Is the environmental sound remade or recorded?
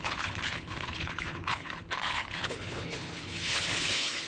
remade